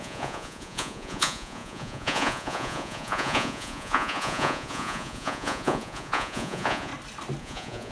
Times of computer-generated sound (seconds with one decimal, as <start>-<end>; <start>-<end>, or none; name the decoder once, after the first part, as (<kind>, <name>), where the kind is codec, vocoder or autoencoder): 0.0-6.9 (vocoder, Vocos); 7.4-7.9